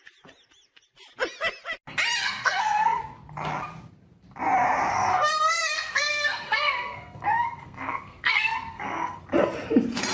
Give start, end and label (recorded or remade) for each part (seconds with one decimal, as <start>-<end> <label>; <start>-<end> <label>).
0.0-2.2 recorded; 2.2-3.0 remade; 3.0-4.9 recorded; 4.9-9.2 remade; 9.2-10.1 recorded